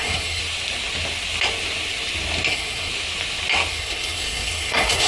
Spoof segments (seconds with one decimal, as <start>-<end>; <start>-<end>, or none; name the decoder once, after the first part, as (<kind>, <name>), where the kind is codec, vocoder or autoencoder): 0.0-0.4 (codec, SNAC); 2.5-2.9; 3.7-5.1